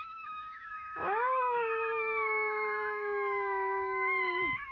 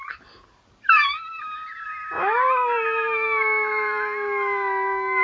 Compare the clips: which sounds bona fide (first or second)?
second